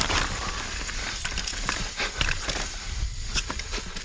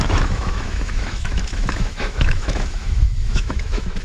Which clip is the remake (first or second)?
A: second